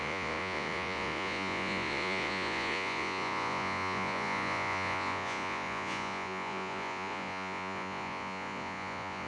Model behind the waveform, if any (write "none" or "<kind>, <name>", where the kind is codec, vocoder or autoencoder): vocoder, Vocos